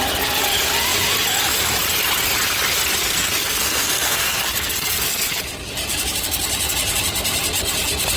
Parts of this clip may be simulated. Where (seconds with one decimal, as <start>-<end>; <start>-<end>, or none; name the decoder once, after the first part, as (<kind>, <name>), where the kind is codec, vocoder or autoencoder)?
3.0-5.4 (codec, SNAC)